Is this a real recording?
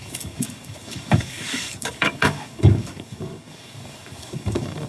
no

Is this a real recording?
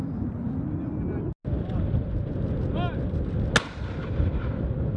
yes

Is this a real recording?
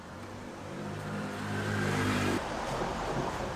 no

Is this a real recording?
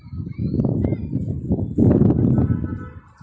yes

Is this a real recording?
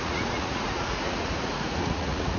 no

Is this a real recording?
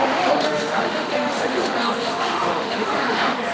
no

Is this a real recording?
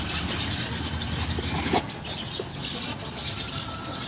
yes